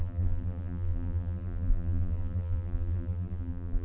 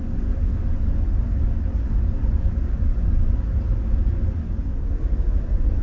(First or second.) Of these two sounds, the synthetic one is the first